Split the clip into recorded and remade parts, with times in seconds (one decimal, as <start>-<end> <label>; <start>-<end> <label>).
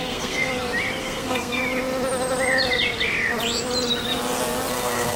0.0-0.5 remade; 0.5-1.0 recorded; 1.0-1.6 remade; 1.6-4.7 recorded; 4.7-5.2 remade